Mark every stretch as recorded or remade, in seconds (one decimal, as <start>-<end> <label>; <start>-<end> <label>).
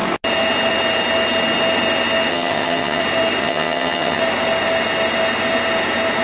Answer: 0.0-2.3 recorded; 2.3-3.0 remade; 3.0-3.4 recorded; 3.4-4.2 remade; 4.2-6.2 recorded